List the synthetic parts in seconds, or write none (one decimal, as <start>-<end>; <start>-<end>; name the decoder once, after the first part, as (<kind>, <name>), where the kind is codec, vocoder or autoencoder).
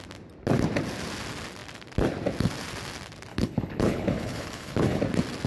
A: 3.3-5.0 (codec, HILCodec)